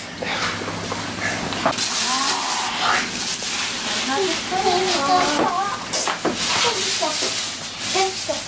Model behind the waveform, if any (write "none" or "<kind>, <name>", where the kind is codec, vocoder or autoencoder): none